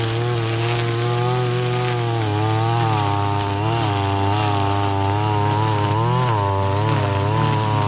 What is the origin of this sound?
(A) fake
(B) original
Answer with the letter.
B